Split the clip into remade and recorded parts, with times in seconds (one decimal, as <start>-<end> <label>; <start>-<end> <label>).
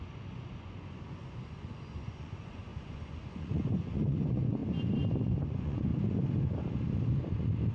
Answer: 0.0-4.6 remade; 4.6-5.4 recorded; 5.4-5.9 remade; 5.9-7.7 recorded